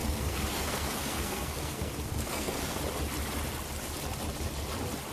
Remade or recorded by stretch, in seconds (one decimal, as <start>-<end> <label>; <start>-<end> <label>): 0.0-2.8 remade; 2.8-5.1 recorded